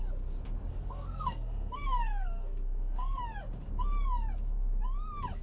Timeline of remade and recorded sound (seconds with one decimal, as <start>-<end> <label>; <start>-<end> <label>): 0.0-0.7 recorded; 0.7-3.2 remade; 3.2-5.4 recorded